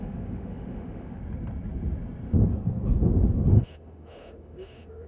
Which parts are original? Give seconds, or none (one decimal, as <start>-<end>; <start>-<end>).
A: 1.2-3.5